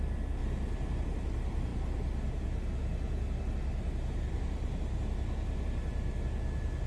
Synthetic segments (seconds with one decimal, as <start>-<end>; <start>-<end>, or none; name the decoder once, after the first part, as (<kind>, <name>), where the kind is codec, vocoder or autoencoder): none